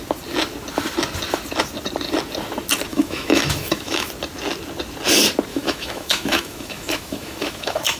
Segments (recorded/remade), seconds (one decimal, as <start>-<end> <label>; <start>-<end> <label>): 0.0-2.9 recorded; 2.9-4.1 remade; 4.1-5.5 recorded; 5.5-8.0 remade